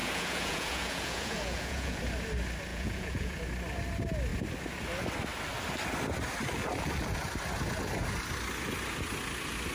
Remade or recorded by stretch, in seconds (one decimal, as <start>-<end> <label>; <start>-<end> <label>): 0.0-2.0 remade; 2.0-2.7 recorded; 2.7-3.4 remade; 3.4-9.7 recorded